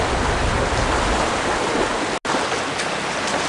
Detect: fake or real real